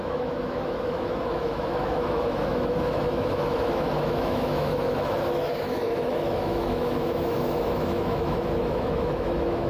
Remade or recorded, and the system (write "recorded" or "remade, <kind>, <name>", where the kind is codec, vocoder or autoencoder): remade, autoencoder, DAC-VAE